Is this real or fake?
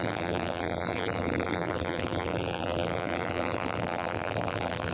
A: fake